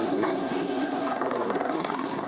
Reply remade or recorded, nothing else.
remade